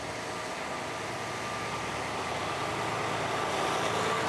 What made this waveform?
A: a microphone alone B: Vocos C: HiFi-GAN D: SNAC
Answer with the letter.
A